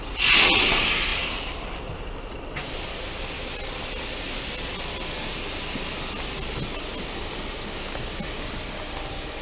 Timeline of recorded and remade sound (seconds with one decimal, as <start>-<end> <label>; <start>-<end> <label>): 0.0-1.1 recorded; 1.1-4.5 remade; 4.5-9.4 recorded